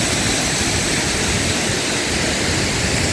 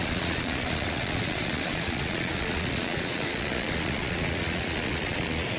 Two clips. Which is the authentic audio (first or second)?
first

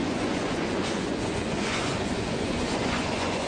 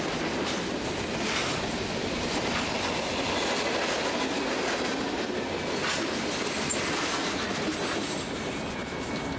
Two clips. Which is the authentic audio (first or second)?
second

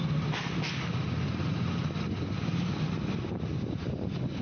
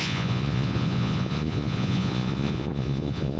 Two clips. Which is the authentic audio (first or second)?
first